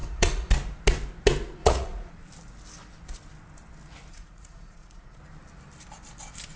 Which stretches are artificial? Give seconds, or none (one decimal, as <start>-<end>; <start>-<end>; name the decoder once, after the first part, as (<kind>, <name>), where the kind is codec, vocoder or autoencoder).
0.0-0.5 (vocoder, Vocos); 1.6-2.1; 4.1-5.2